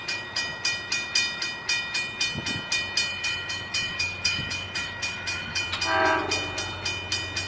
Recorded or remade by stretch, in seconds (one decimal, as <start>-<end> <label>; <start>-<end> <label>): 0.0-3.1 recorded; 3.1-5.6 remade; 5.6-7.5 recorded